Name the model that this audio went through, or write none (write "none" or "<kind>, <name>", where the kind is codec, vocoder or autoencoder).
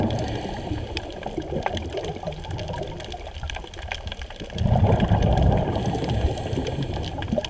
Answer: vocoder, BigVGAN v2